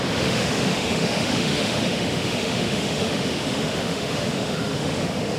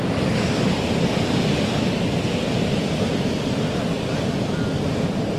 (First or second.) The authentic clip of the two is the second